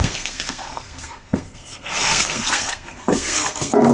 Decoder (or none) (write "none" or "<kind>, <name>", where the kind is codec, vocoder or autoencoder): codec, SNAC